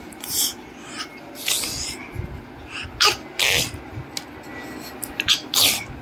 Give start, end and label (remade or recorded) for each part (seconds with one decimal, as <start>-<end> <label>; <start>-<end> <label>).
0.0-6.0 recorded